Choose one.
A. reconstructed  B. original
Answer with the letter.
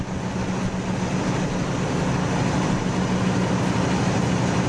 B